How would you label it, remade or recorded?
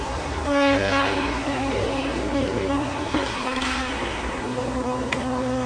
remade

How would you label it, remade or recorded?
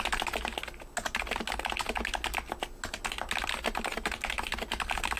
recorded